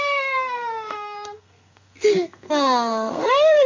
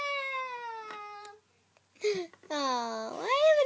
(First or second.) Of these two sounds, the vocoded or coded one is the first